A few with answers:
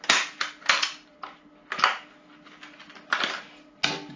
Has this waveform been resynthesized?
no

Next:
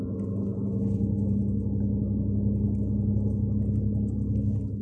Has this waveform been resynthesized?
no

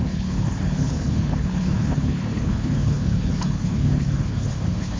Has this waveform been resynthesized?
yes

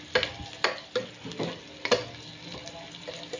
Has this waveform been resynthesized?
no